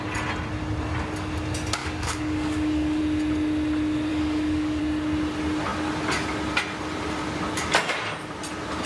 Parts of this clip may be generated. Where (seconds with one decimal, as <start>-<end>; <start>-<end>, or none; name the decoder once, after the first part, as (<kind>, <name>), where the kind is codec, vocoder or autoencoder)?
1.8-3.0 (codec, DAC); 4.1-4.8